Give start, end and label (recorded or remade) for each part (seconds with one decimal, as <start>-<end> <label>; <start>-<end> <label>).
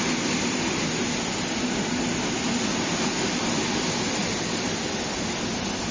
0.0-5.9 recorded